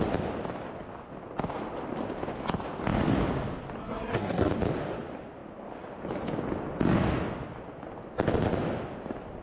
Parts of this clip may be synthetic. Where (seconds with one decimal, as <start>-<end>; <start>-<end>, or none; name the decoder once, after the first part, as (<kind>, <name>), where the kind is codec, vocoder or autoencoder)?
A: 3.8-4.5 (codec, SNAC)